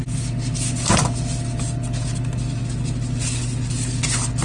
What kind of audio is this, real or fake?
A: real